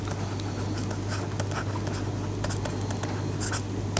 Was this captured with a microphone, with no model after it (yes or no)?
yes